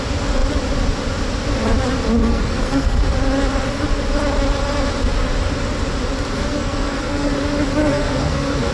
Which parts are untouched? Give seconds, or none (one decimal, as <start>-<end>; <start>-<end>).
0.0-2.2; 3.0-6.4; 7.3-7.8